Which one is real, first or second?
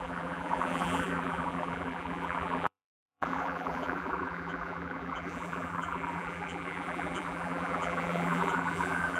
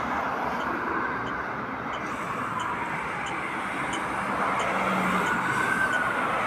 second